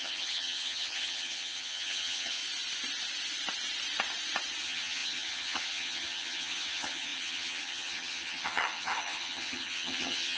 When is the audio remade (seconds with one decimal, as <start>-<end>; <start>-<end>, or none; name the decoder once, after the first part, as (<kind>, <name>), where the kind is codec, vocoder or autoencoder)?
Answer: 0.0-2.4 (vocoder, HiFi-GAN); 4.6-10.4

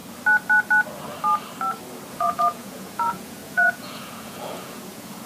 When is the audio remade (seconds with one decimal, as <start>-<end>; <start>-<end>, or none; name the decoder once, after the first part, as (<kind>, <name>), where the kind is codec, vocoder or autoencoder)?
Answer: 2.1-5.3 (vocoder, Vocos)

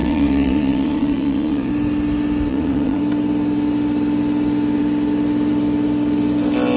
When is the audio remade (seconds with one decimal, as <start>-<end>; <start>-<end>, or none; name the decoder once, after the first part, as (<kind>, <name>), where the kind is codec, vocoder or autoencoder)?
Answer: 0.0-1.7 (vocoder, Vocos); 2.5-3.0